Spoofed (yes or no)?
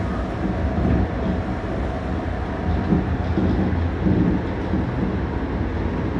no